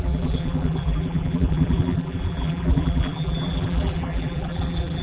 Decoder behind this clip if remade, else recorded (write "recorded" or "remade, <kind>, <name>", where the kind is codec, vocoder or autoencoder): remade, vocoder, BigVGAN v2